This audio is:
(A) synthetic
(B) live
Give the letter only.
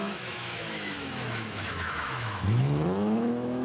A